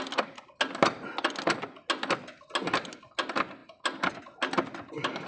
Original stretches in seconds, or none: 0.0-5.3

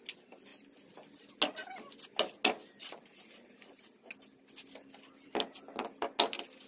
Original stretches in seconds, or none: 0.0-6.7

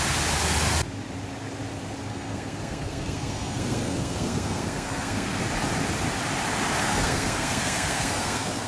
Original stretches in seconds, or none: 0.0-2.1; 5.4-6.8

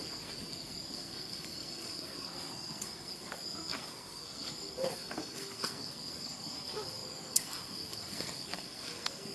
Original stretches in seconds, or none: none